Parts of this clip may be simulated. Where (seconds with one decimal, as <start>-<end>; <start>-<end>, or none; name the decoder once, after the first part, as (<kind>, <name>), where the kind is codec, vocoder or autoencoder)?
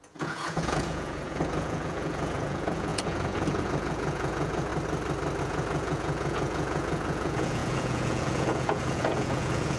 0.0-4.7 (vocoder, Vocos); 5.4-9.8